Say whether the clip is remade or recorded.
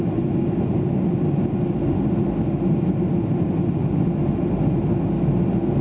recorded